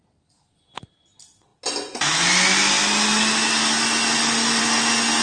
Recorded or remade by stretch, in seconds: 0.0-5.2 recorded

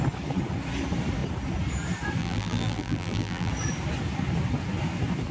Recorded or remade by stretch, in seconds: 0.0-2.2 recorded; 2.2-3.5 remade; 3.5-5.3 recorded

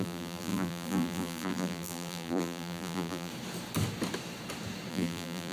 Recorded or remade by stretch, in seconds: 0.0-3.3 remade; 3.3-4.9 recorded; 4.9-5.5 remade